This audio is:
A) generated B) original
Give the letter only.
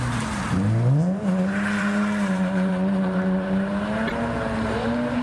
A